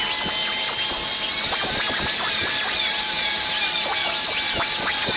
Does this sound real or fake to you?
real